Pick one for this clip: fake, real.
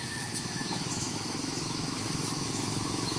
fake